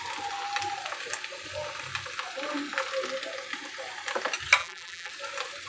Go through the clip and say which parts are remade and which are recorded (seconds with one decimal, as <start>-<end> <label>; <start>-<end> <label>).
0.0-4.6 recorded; 4.6-5.1 remade; 5.1-5.7 recorded